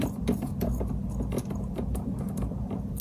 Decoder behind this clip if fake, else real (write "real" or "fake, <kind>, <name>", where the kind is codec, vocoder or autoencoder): real